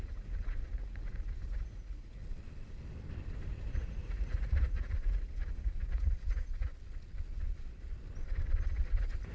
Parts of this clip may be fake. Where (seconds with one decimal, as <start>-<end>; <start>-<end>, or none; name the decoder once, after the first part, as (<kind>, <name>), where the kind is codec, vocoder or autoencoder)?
0.0-2.2 (vocoder, Vocos); 3.5-6.7